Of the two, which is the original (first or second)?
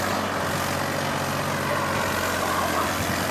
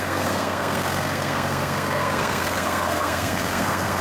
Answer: first